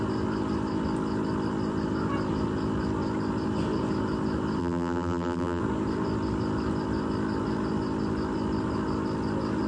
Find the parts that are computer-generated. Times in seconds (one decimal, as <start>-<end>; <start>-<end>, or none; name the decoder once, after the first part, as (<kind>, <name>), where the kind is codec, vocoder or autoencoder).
4.6-5.6 (vocoder, BigVGAN v2)